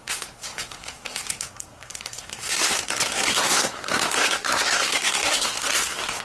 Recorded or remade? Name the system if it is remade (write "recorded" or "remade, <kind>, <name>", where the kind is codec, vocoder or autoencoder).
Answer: remade, codec, SNAC